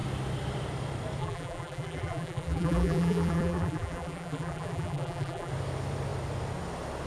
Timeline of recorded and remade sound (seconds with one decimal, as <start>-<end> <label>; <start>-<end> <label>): 0.0-1.2 recorded; 1.2-5.5 remade; 5.5-7.1 recorded